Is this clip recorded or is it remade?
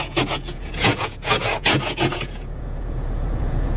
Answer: remade